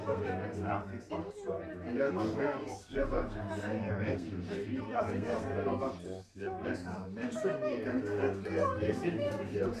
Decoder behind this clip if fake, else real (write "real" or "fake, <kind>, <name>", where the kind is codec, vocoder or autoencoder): fake, codec, SNAC